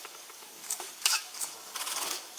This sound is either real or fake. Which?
fake